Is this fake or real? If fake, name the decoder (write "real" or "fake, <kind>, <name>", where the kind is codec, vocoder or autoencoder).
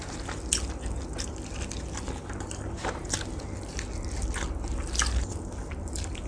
real